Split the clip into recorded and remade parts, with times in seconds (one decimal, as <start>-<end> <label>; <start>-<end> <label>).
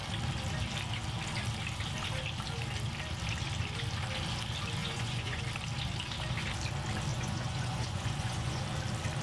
0.0-4.8 recorded; 4.8-5.4 remade; 5.4-7.1 recorded; 7.1-8.6 remade; 8.6-9.2 recorded